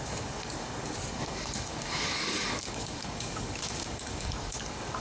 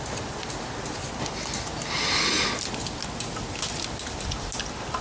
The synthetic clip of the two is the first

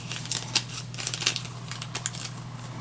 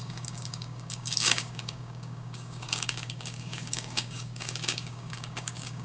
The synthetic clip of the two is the second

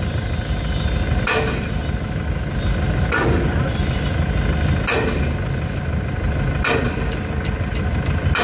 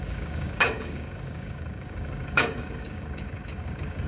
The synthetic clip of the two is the second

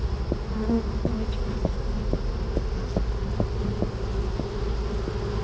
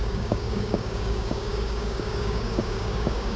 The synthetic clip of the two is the second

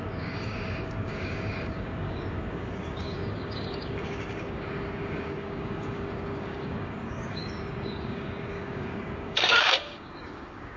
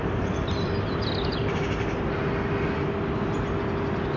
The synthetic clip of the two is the first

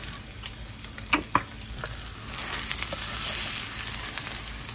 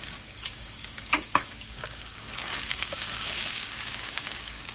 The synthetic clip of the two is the second